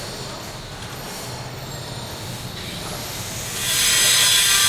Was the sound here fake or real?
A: real